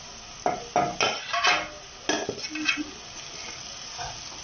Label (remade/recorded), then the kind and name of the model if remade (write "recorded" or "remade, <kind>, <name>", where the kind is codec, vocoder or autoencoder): recorded